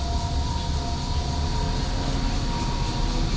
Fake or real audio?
real